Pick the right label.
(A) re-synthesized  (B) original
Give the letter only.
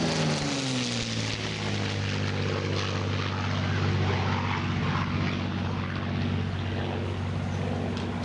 B